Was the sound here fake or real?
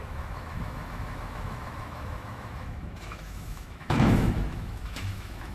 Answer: fake